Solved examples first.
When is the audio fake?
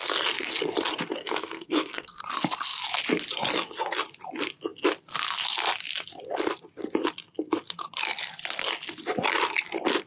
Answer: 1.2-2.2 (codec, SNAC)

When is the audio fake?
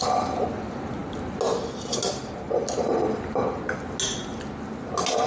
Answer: none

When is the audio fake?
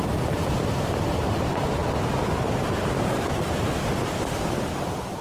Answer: 0.0-1.8 (vocoder, BigVGAN v2); 2.5-5.2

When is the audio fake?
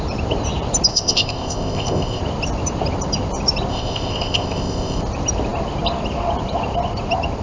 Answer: 0.9-2.2 (codec, ZipCodec); 3.7-5.0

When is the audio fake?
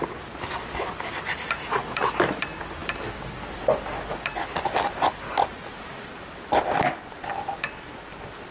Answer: none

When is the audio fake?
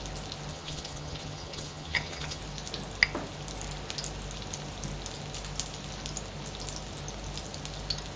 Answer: 0.5-2.4 (vocoder, HiFi-GAN)